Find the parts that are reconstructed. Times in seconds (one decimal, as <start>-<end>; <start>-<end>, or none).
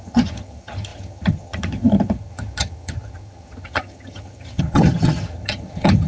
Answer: 0.0-6.1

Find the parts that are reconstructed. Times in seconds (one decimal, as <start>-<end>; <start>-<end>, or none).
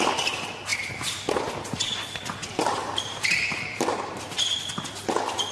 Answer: 0.7-1.5; 2.4-4.7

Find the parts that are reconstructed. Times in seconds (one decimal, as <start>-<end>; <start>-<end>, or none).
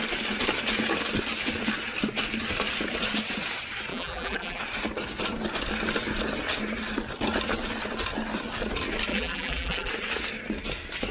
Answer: 3.9-4.6; 9.1-9.9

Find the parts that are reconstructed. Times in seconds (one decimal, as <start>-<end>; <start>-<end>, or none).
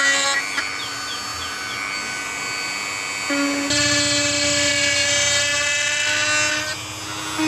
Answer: none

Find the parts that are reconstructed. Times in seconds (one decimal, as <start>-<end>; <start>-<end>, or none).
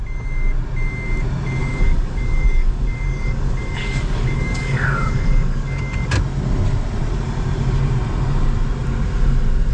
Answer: 1.6-5.8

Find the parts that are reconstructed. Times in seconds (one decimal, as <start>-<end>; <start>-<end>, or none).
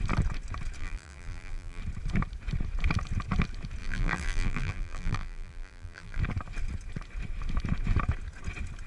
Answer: 0.8-1.8; 3.8-6.2